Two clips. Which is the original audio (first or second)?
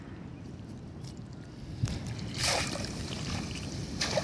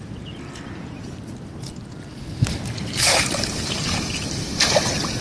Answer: second